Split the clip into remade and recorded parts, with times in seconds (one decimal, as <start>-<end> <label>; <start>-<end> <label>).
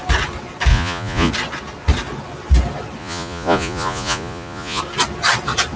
0.0-0.7 recorded; 0.7-1.3 remade; 1.3-3.0 recorded; 3.0-4.8 remade; 4.8-5.8 recorded